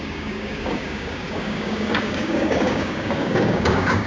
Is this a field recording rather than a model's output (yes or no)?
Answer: no